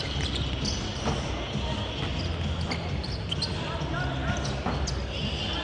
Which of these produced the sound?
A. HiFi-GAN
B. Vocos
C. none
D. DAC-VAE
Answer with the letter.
C